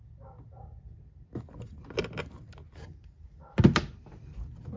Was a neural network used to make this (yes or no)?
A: no